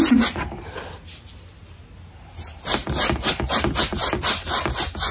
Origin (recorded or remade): recorded